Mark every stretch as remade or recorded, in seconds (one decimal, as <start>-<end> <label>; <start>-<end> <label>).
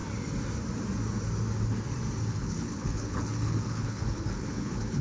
0.0-2.3 recorded; 2.3-5.0 remade